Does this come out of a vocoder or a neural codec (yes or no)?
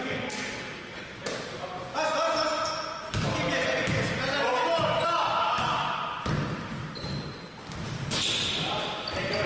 no